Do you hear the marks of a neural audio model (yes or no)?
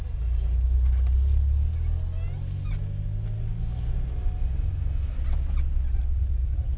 no